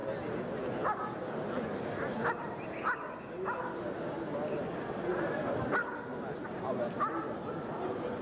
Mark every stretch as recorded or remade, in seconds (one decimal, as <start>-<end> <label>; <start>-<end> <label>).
0.0-6.1 recorded; 6.1-6.7 remade; 6.7-8.2 recorded

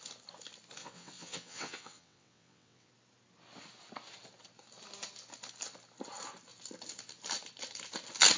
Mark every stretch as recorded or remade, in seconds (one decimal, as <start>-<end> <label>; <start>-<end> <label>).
0.0-0.8 recorded; 0.8-2.9 remade; 2.9-8.4 recorded